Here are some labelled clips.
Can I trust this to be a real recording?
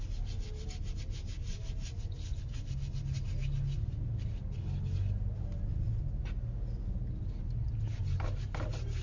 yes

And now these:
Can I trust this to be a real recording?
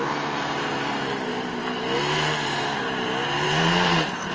no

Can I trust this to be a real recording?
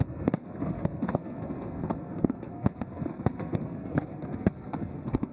no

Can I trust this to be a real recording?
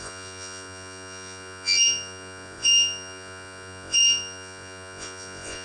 no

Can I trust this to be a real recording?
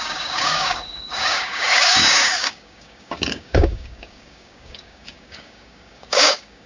no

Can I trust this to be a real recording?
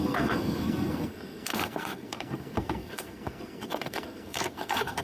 no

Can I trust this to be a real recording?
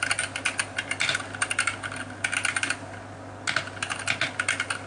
yes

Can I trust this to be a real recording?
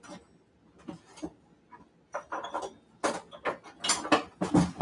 yes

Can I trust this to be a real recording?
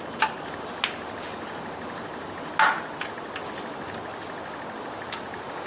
yes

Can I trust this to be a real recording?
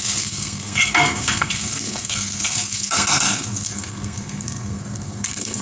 no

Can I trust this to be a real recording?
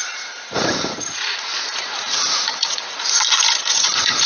no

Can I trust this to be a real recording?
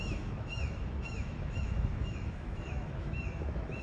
no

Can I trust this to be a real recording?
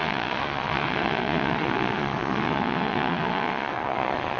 no